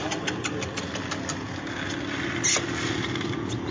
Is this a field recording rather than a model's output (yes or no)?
yes